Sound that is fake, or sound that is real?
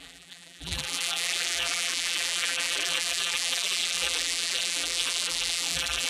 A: fake